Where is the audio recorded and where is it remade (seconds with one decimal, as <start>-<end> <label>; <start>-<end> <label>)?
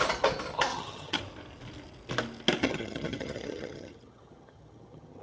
0.0-0.7 recorded; 0.7-1.2 remade; 1.2-2.6 recorded; 2.6-5.2 remade